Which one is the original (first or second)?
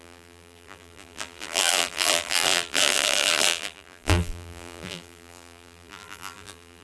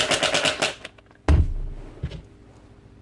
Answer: second